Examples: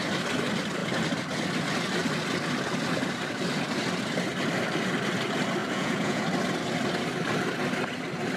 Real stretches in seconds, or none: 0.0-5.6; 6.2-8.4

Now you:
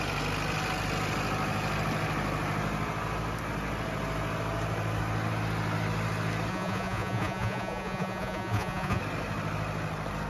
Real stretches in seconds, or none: 0.0-6.5; 9.0-10.3

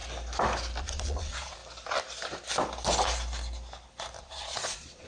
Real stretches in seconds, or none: 0.0-0.8; 1.6-4.2

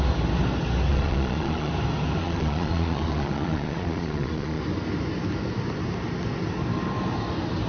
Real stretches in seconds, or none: 0.0-0.9; 1.7-2.2; 4.6-7.7

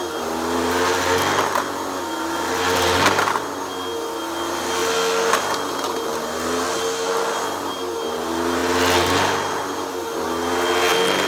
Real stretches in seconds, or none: 0.0-11.3

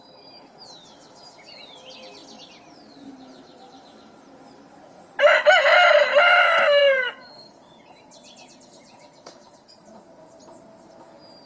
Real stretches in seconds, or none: 0.0-6.8; 9.8-11.5

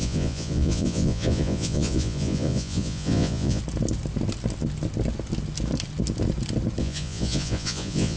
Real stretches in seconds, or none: 3.6-6.8

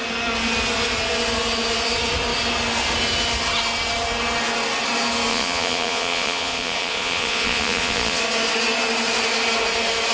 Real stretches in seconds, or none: 0.0-5.3; 8.2-10.1